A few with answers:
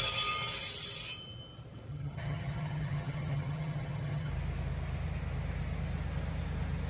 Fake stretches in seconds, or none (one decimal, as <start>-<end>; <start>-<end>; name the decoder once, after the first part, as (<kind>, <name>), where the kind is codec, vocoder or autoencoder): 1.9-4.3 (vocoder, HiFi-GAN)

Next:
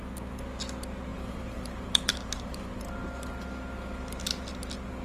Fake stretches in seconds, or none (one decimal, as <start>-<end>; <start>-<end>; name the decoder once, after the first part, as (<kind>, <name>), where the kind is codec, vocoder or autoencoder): 1.1-3.0 (vocoder, BigVGAN v2)

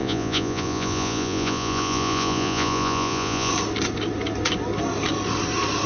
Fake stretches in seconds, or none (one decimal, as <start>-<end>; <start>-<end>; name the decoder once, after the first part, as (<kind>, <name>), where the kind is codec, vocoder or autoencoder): 0.0-3.5 (vocoder, Vocos)

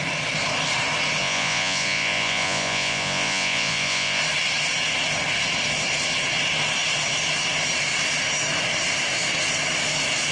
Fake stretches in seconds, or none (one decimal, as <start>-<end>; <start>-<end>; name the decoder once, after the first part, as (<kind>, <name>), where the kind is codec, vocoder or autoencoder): 1.2-4.2 (vocoder, Vocos)